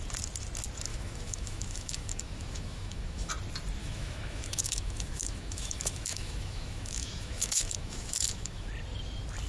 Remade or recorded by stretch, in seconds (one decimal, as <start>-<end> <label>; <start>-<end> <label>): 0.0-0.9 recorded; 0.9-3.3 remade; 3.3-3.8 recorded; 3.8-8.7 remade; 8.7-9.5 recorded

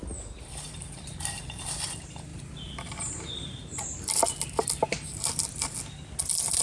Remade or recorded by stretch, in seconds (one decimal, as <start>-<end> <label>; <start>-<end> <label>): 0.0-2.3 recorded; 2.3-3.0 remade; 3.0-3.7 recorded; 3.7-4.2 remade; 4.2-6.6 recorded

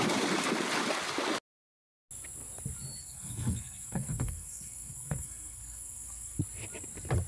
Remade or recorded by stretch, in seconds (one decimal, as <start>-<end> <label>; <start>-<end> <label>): 0.0-3.0 recorded; 3.0-6.4 remade; 6.4-7.3 recorded

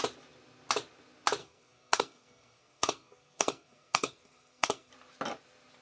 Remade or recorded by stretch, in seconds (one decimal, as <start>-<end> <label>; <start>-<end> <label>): 0.0-1.4 recorded; 1.4-4.9 remade; 4.9-5.8 recorded